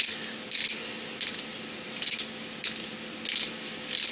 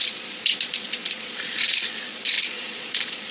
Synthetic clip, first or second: second